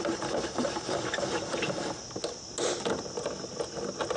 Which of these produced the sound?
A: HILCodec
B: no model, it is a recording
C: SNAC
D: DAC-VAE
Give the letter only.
B